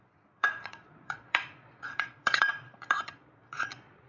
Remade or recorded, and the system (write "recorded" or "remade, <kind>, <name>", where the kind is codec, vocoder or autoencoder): remade, vocoder, Vocos